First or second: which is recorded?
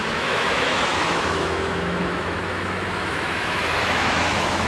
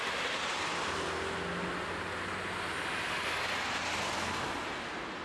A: second